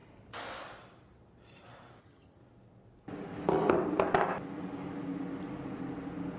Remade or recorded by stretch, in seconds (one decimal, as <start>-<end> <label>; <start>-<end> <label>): 0.0-2.0 recorded; 2.0-2.4 remade; 2.4-6.4 recorded